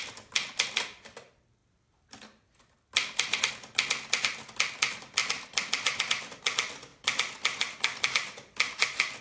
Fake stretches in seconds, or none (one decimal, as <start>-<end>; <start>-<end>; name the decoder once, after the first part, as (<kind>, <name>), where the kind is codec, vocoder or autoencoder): 5.2-6.4 (vocoder, BigVGAN v2)